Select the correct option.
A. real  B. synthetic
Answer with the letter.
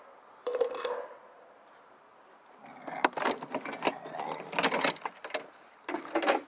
A